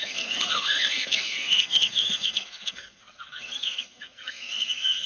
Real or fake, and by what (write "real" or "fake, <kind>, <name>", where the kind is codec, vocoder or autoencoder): fake, codec, SNAC